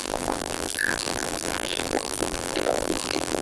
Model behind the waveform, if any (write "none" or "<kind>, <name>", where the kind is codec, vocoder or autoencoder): vocoder, BigVGAN v2